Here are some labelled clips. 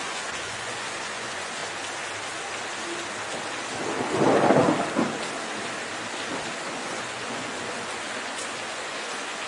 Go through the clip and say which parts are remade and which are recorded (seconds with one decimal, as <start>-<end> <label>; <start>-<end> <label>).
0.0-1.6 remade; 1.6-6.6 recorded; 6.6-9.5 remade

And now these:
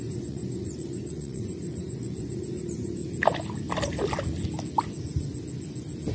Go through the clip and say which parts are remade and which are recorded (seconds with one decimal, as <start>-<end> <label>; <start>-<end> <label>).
0.0-3.0 remade; 3.0-6.1 recorded

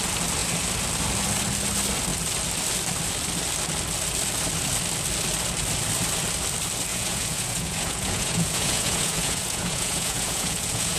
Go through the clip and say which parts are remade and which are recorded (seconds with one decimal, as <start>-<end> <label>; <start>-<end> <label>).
0.0-6.9 recorded; 6.9-11.0 remade

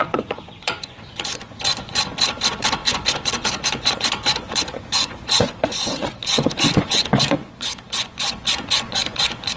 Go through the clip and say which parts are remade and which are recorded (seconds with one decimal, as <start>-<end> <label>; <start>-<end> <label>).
0.0-9.6 remade

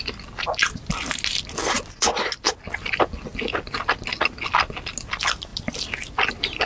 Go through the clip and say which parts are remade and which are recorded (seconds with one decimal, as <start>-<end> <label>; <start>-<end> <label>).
0.0-6.7 recorded

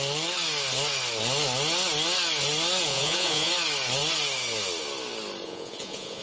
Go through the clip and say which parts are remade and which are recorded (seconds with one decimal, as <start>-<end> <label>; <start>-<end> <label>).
0.0-2.9 recorded; 2.9-3.5 remade; 3.5-5.4 recorded; 5.4-6.2 remade

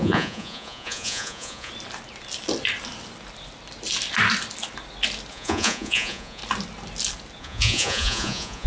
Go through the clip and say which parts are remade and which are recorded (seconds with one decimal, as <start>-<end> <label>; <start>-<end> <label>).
0.0-1.7 remade; 1.7-5.3 recorded; 5.3-6.4 remade; 6.4-7.4 recorded; 7.4-8.7 remade

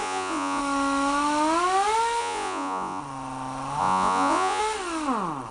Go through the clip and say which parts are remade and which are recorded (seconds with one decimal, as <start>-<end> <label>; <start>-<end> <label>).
0.0-0.6 remade; 0.6-2.2 recorded; 2.2-3.0 remade; 3.0-3.8 recorded; 3.8-4.6 remade; 4.6-5.5 recorded